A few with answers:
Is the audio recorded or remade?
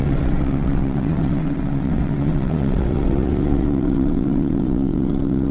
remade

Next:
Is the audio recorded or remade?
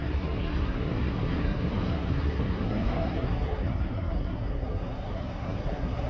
remade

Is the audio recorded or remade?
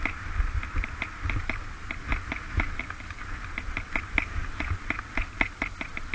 recorded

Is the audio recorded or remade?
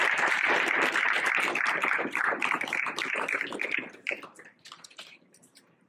remade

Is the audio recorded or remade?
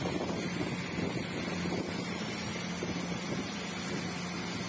recorded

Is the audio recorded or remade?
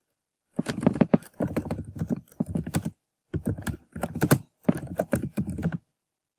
recorded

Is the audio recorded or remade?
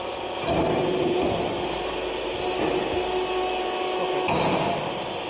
recorded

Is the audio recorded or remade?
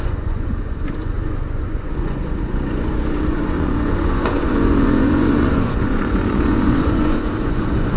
remade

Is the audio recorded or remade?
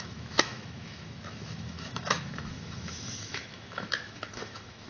remade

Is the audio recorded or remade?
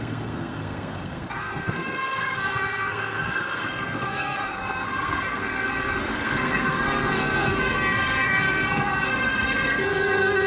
remade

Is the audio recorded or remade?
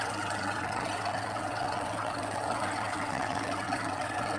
remade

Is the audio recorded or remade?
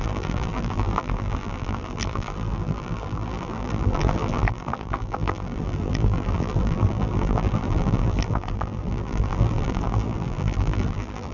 remade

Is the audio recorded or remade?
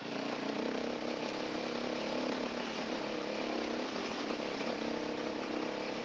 recorded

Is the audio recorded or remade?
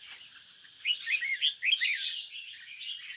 recorded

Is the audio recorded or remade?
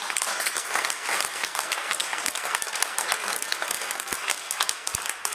remade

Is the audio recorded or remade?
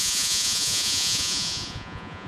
remade